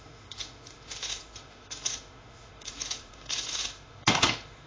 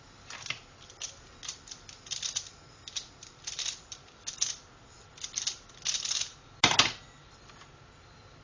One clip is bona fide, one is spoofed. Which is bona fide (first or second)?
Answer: second